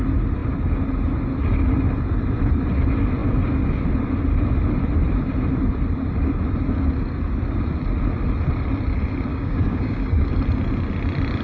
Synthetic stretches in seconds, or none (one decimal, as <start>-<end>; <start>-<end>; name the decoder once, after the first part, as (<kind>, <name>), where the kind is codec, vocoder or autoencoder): 9.3-10.3 (codec, DAC)